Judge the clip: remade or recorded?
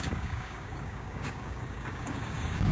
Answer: remade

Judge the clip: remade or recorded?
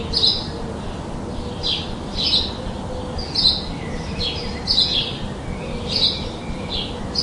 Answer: recorded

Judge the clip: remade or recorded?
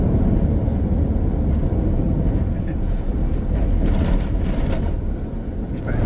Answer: recorded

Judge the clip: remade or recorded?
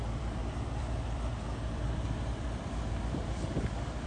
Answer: remade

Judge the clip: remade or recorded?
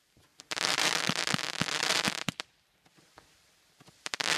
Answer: remade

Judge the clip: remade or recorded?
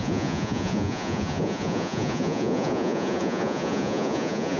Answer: remade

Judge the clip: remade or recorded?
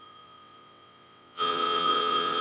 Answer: remade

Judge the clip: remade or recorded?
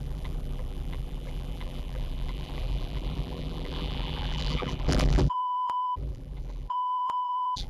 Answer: remade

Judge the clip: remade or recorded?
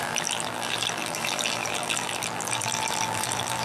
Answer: remade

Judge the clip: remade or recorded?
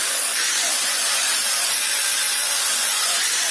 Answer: remade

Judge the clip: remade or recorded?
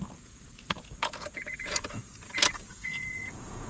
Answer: remade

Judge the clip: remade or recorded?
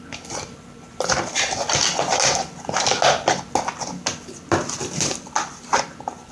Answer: recorded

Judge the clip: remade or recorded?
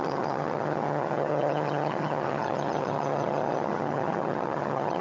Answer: remade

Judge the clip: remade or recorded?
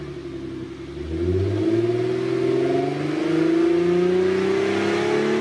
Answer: recorded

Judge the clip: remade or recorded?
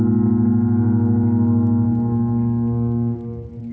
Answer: recorded